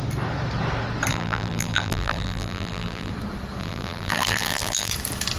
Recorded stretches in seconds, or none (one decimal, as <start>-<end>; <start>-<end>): 0.0-1.1; 3.1-3.6; 4.9-5.4